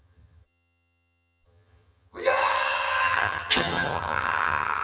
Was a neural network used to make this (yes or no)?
yes